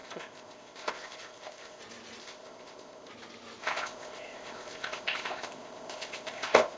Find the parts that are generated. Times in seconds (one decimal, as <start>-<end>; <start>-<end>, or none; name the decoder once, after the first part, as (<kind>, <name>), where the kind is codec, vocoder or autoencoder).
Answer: 0.0-1.8 (codec, ZipCodec); 2.2-3.1; 3.6-6.8

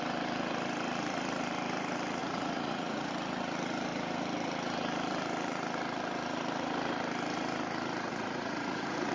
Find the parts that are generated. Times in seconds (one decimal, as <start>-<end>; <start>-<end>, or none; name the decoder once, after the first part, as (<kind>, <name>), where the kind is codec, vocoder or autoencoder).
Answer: 2.2-3.1 (vocoder, Vocos); 8.1-9.1

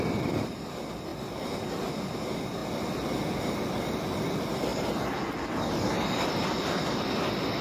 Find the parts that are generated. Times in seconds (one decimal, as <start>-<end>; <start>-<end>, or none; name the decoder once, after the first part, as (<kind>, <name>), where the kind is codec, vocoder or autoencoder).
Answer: none

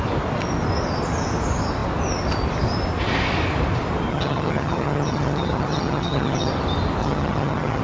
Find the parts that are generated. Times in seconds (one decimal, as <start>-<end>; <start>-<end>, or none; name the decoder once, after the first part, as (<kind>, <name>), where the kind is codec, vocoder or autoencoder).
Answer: 4.1-6.5 (vocoder, HiFi-GAN); 7.0-7.8

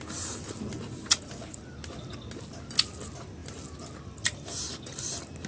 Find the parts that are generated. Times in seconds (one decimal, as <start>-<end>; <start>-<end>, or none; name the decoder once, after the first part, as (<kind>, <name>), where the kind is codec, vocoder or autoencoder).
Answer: none

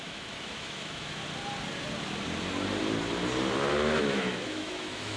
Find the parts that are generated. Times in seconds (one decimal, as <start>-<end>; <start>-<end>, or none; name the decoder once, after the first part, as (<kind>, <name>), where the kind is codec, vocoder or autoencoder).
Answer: 0.0-1.2 (autoencoder, DAC-VAE); 4.0-5.2